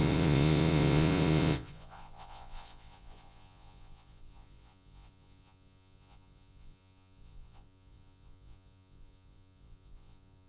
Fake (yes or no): yes